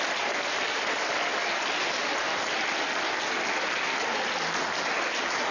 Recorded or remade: recorded